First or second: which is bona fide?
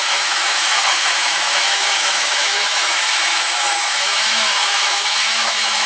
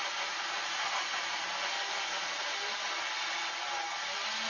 second